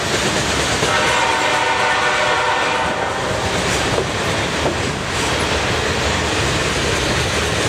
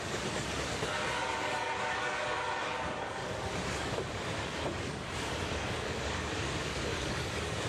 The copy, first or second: second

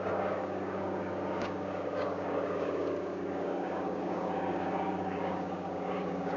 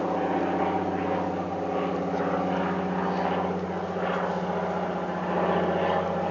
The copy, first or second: first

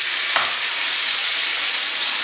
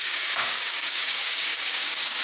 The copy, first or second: second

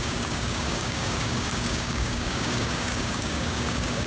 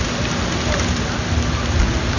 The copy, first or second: first